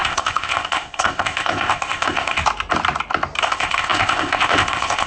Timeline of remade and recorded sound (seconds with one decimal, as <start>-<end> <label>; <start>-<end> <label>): 0.0-2.4 remade; 2.4-3.4 recorded; 3.4-5.1 remade